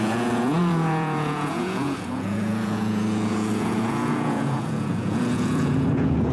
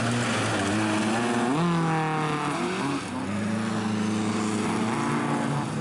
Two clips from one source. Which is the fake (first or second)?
first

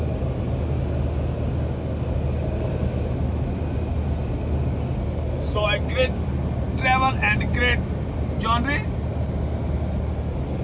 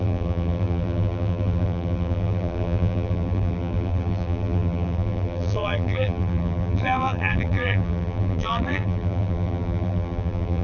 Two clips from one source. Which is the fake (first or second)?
second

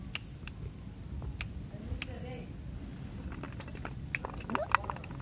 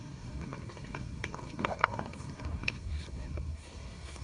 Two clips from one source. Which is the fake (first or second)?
second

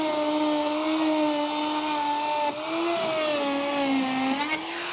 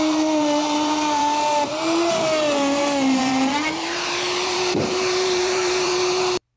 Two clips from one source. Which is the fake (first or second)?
second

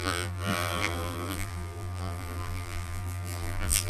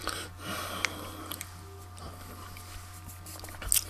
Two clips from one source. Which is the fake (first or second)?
first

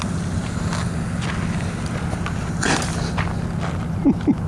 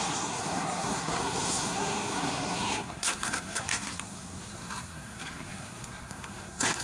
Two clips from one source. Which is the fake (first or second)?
second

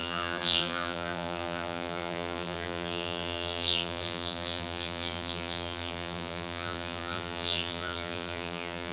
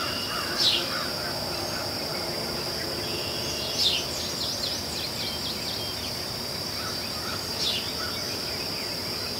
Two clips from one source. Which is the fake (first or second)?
first